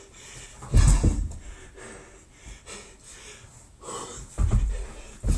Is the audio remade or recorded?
recorded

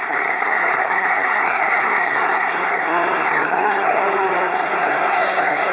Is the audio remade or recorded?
remade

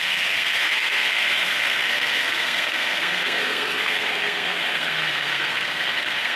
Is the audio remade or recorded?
remade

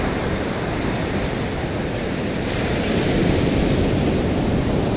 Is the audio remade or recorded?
recorded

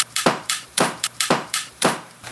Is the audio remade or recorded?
remade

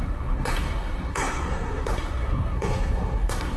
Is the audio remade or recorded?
remade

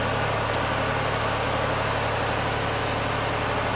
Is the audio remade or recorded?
recorded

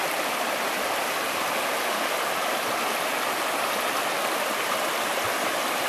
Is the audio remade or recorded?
recorded